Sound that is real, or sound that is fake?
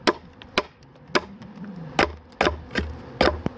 real